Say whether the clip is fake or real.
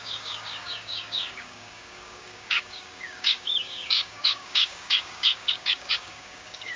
fake